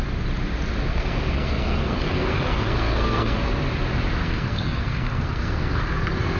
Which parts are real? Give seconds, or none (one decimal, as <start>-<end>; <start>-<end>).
0.0-0.9; 3.4-4.2; 5.9-6.4